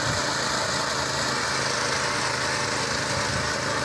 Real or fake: real